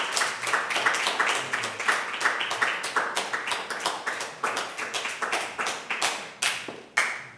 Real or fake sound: real